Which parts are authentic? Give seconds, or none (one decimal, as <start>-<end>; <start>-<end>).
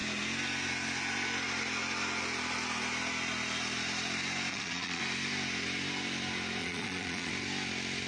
0.0-4.5; 5.0-6.6; 7.3-8.1